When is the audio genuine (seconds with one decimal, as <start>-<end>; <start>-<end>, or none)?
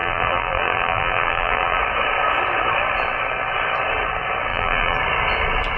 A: 1.8-4.5; 5.0-5.8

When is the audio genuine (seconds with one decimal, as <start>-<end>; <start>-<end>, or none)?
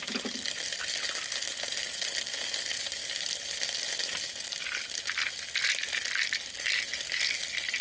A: 0.0-7.8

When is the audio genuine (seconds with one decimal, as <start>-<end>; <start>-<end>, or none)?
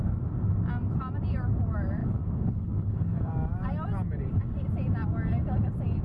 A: 0.0-2.0; 3.3-6.0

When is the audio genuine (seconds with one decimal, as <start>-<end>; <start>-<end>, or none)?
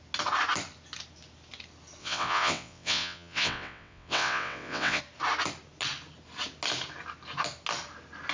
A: 0.0-2.0; 5.0-8.3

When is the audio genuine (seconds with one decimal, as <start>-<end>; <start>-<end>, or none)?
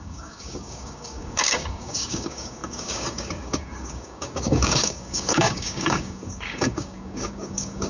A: none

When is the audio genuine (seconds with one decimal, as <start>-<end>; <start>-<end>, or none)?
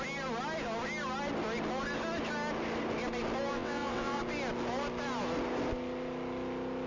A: 0.0-3.5; 4.2-6.9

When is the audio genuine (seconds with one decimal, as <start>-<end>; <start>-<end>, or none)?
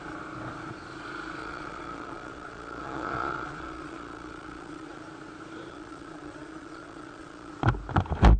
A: 0.0-1.4; 5.0-5.7; 7.5-8.4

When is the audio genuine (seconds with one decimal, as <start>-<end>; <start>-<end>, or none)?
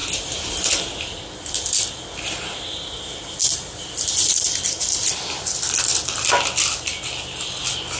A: 2.3-3.5; 4.8-8.0